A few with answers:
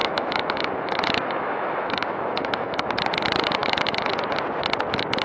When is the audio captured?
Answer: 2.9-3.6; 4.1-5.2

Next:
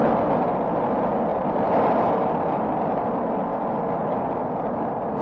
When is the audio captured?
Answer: 0.0-1.3; 2.3-3.5; 4.4-5.2

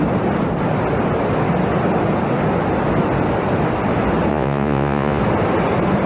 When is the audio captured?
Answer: 0.0-4.3; 5.2-6.1

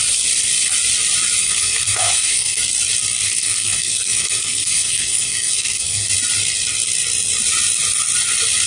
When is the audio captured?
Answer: 0.0-1.4; 2.6-3.2; 6.1-8.7

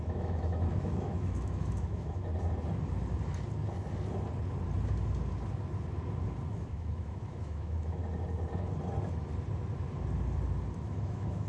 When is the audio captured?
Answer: 2.3-6.5; 8.0-10.8

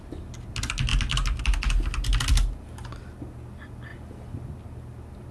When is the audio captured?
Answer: 0.0-5.3